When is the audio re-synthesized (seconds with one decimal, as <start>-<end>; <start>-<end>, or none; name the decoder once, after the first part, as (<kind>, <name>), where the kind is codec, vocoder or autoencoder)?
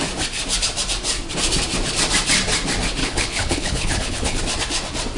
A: 3.0-4.4 (codec, HILCodec)